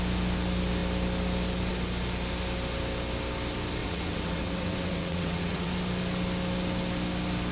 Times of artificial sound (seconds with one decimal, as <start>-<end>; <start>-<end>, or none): 3.8-5.7